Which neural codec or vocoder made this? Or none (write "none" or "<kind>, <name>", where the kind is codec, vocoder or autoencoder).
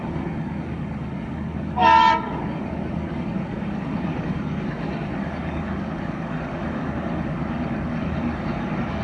codec, DAC